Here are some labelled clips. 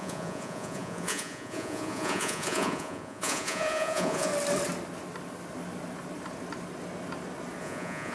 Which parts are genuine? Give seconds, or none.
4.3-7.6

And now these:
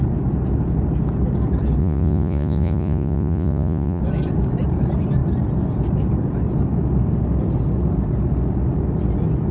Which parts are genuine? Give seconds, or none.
0.0-1.8; 4.0-9.5

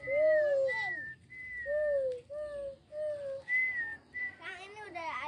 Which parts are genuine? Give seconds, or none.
0.0-3.9

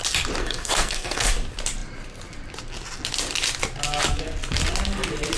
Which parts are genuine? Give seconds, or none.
0.0-0.4; 1.3-5.4

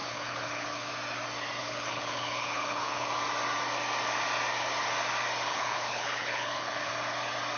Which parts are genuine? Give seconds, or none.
0.9-1.6; 3.1-5.5; 6.9-7.6